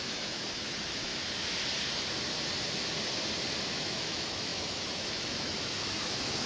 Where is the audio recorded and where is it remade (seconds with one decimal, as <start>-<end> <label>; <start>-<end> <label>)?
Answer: 0.0-1.1 remade; 1.1-3.7 recorded; 3.7-6.5 remade